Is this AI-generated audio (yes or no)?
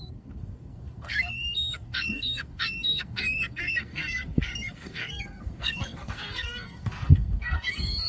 yes